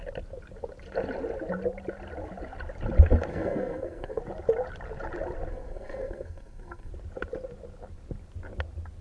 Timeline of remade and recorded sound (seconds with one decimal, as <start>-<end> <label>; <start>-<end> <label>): 0.0-3.3 recorded; 3.3-4.2 remade; 4.2-5.5 recorded; 5.5-6.9 remade; 6.9-9.0 recorded

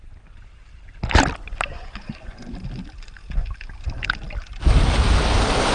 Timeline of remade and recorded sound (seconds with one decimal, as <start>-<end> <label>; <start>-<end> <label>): 0.0-1.7 recorded; 1.7-2.4 remade; 2.4-5.7 recorded

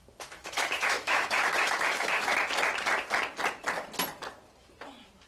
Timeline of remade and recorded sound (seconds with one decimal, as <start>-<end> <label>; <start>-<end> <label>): 0.0-2.3 remade; 2.3-5.3 recorded